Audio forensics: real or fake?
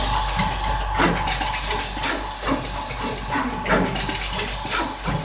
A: real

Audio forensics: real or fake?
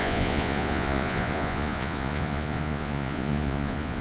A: fake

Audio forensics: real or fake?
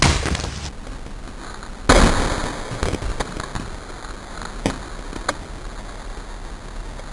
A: real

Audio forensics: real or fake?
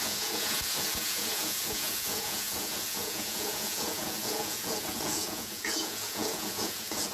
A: fake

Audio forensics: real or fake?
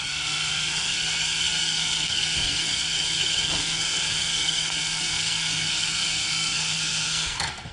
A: fake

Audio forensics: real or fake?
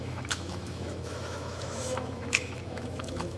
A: fake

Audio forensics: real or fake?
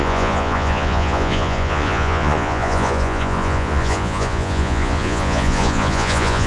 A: fake